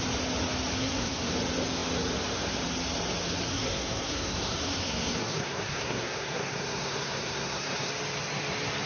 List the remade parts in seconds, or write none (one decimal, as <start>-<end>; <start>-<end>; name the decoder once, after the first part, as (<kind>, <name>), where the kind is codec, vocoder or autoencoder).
0.8-1.3 (codec, SNAC); 3.5-7.9